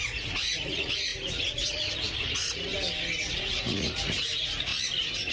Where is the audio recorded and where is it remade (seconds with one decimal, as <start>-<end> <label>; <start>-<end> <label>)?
0.0-2.7 remade; 2.7-3.3 recorded; 3.3-4.7 remade; 4.7-5.3 recorded

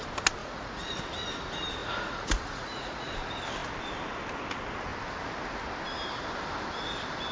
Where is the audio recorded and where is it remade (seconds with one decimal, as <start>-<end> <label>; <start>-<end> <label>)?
0.0-0.4 recorded; 0.4-1.0 remade; 1.0-1.8 recorded; 1.8-3.1 remade; 3.1-7.3 recorded

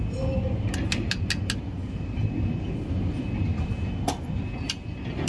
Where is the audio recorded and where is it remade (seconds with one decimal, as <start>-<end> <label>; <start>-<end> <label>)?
0.0-5.3 recorded

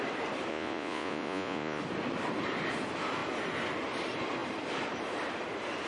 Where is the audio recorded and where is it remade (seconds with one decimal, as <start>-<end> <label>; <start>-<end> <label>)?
0.0-0.5 recorded; 0.5-1.8 remade; 1.8-5.9 recorded

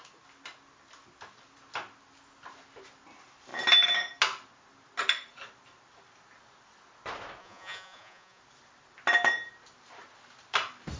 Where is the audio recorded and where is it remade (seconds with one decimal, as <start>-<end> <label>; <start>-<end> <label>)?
0.0-7.4 recorded; 7.4-8.4 remade; 8.4-11.0 recorded

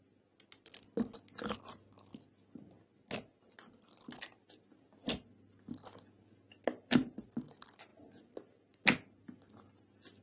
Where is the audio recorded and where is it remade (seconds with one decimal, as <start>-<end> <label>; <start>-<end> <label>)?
0.0-10.2 recorded